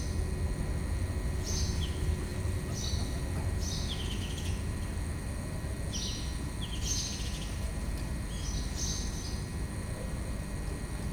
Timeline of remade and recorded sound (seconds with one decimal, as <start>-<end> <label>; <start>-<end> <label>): 0.0-11.1 recorded